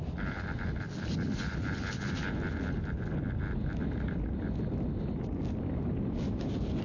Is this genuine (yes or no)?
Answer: yes